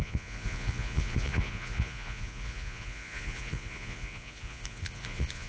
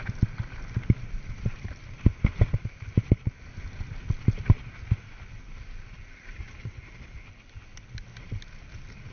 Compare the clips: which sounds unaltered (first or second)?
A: second